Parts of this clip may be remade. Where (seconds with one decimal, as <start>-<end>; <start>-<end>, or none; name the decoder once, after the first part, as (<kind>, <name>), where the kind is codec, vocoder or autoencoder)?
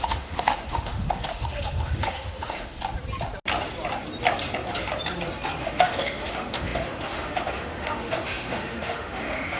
0.0-2.8 (autoencoder, DAC-VAE); 5.6-9.6